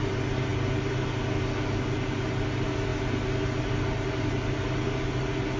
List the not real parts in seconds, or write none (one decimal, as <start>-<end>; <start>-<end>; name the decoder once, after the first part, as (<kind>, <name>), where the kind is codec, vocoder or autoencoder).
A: none